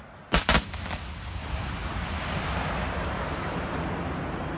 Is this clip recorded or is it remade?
recorded